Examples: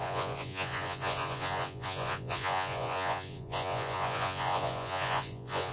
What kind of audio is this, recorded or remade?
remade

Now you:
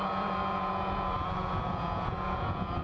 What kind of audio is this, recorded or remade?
remade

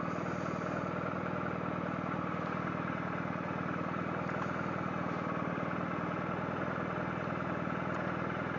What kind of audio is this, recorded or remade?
recorded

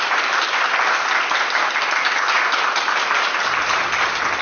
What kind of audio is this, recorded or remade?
recorded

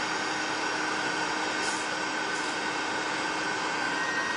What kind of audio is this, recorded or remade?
recorded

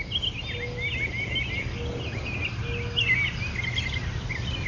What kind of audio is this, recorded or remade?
recorded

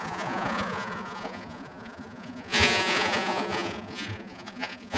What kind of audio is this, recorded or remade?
remade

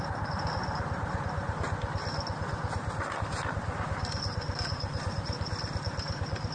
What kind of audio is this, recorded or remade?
recorded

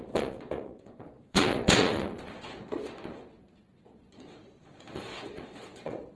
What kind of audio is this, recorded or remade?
remade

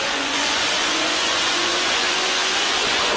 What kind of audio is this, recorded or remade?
remade